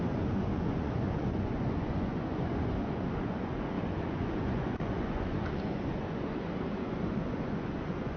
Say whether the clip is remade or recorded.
remade